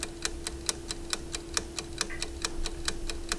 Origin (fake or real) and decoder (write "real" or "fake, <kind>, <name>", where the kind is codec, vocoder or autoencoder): real